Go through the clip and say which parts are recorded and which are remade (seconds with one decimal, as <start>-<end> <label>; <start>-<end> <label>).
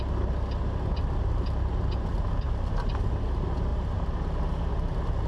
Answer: 0.0-5.3 recorded